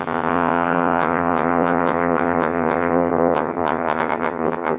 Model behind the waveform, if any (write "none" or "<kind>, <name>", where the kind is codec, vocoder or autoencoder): vocoder, HiFi-GAN